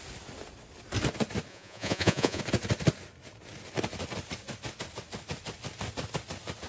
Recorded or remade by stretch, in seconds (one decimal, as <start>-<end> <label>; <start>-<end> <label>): 0.0-1.5 recorded; 1.5-2.4 remade; 2.4-6.7 recorded